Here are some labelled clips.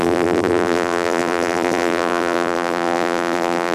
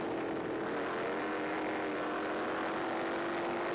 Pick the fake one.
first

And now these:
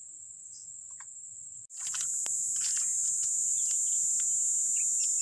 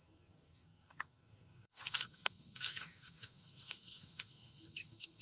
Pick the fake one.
second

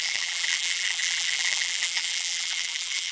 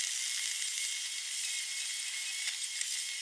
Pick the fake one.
first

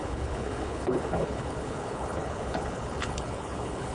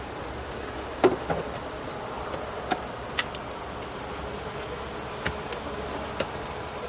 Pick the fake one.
first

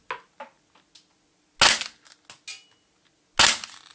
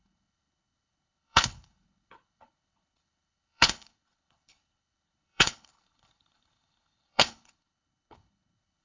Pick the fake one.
second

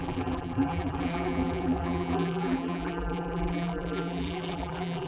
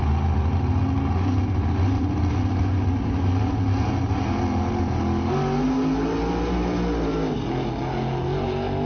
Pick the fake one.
first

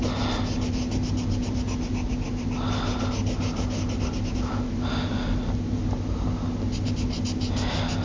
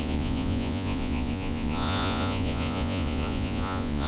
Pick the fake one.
second